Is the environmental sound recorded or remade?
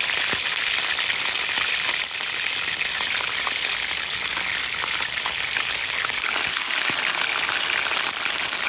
recorded